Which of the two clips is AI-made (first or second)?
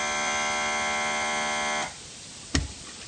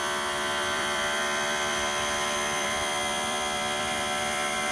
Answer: second